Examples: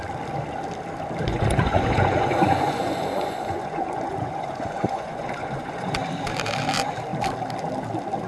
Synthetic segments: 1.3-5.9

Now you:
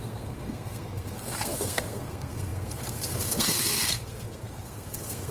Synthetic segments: 0.0-5.3

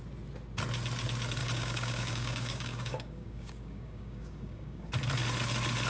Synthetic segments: 1.4-4.9

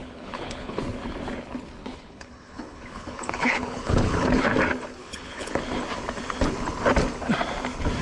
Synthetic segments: 0.0-0.8; 1.8-4.4; 5.0-5.6

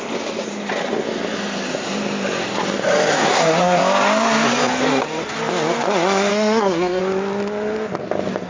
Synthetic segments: 3.1-3.8; 6.3-7.0

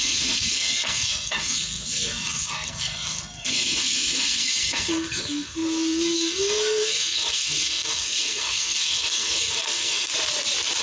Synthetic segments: 0.0-10.1

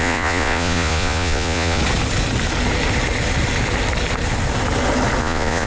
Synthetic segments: 0.0-1.8; 5.2-5.7